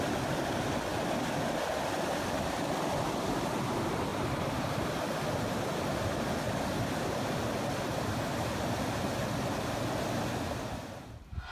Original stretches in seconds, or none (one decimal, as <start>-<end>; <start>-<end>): 0.0-11.5